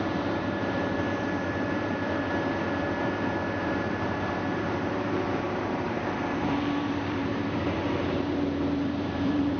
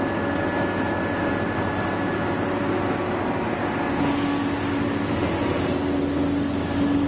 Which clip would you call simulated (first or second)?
first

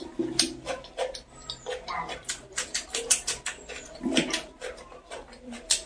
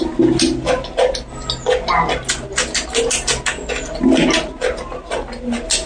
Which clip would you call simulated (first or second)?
first